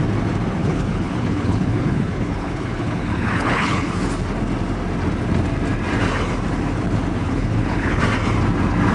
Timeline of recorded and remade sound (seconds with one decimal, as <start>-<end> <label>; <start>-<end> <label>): 0.0-0.6 recorded; 0.6-3.9 remade; 3.9-7.2 recorded; 7.2-8.0 remade; 8.0-8.9 recorded